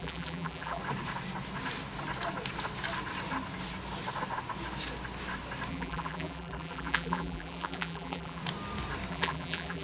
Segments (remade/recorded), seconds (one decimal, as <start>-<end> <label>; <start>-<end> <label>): 0.0-0.8 remade; 0.8-5.7 recorded; 5.7-8.4 remade; 8.4-9.1 recorded; 9.1-9.8 remade